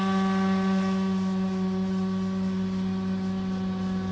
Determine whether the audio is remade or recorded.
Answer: recorded